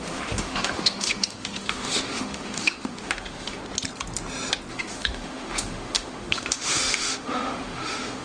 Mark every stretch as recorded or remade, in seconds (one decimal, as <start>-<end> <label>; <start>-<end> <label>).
0.0-3.6 remade; 3.6-4.7 recorded; 4.7-8.2 remade